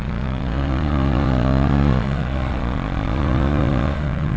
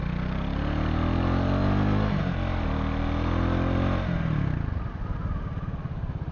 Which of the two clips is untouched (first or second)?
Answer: second